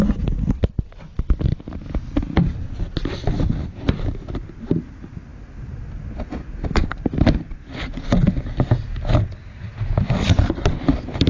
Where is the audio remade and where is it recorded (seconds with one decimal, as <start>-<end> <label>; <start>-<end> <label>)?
0.0-11.3 recorded